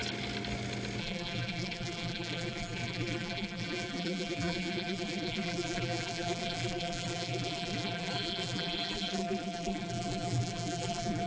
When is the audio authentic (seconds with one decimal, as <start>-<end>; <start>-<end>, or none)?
0.0-1.0